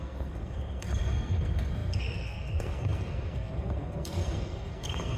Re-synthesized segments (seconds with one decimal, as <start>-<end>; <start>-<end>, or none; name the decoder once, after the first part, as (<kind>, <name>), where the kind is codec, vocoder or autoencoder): 0.0-5.2 (codec, SNAC)